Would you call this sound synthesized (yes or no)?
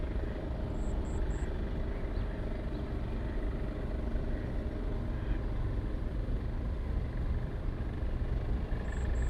no